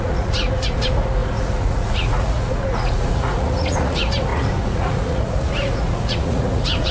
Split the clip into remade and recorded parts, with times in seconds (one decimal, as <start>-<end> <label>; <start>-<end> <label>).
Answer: 0.0-6.9 remade